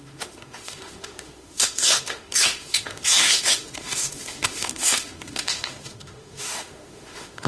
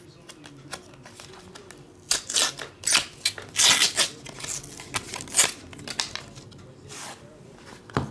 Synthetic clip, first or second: first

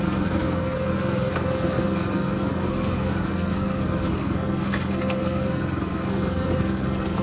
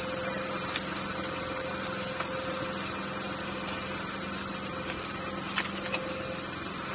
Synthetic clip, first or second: first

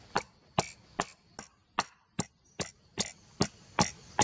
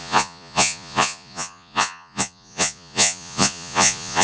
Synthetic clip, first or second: second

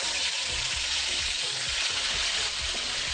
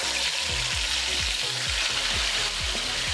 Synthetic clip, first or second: first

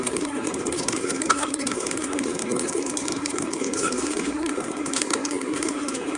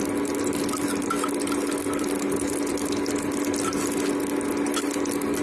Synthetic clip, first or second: first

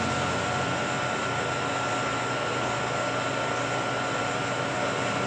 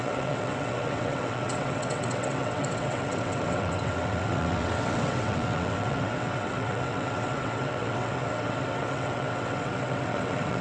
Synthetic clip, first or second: second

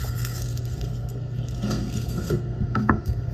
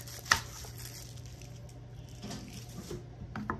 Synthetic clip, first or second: first